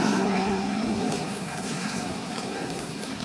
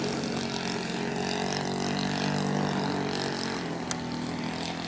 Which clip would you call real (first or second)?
second